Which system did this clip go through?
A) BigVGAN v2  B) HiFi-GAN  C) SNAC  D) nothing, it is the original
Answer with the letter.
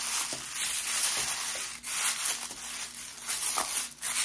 D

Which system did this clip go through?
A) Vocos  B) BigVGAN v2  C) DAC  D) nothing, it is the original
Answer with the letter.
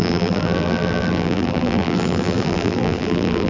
B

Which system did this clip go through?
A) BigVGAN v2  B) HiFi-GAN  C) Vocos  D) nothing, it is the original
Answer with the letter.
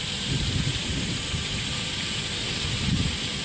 A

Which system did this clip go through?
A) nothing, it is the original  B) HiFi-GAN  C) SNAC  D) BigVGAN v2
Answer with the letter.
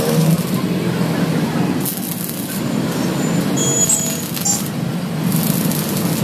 A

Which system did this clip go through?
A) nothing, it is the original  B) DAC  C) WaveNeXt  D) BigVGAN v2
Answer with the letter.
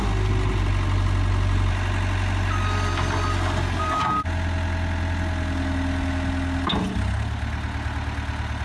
A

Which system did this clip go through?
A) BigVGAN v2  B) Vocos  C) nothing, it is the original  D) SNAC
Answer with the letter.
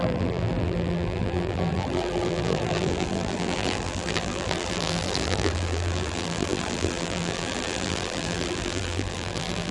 A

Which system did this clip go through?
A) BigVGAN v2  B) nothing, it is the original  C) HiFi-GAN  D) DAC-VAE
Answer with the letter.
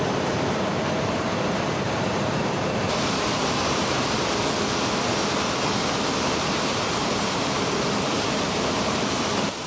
A